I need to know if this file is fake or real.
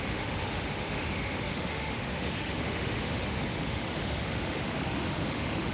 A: fake